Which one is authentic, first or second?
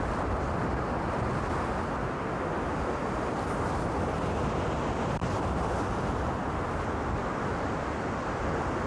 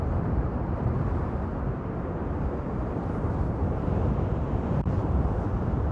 first